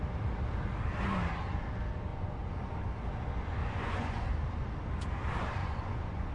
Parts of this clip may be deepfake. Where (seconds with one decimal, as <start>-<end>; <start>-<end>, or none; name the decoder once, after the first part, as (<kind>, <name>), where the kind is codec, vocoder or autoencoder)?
2.1-2.7 (vocoder, Vocos); 3.6-4.3; 5.6-6.3